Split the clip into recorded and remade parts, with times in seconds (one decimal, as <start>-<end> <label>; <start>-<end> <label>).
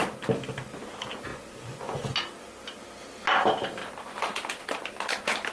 0.0-1.3 recorded; 1.3-2.1 remade; 2.1-5.5 recorded